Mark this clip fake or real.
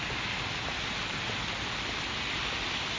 real